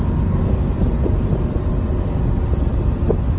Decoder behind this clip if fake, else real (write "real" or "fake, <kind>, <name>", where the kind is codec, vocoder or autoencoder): real